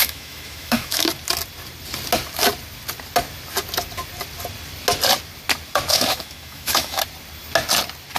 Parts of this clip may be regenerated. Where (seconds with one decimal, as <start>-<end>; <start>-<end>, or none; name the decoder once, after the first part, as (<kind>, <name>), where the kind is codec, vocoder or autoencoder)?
0.0-1.1 (autoencoder, DAC-VAE); 5.9-7.0